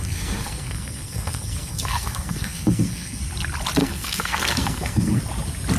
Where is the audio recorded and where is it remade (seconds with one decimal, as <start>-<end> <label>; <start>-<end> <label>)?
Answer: 0.0-3.2 remade; 3.2-3.8 recorded; 3.8-5.2 remade; 5.2-5.8 recorded